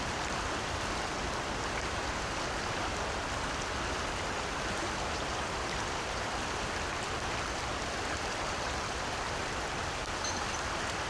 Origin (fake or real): real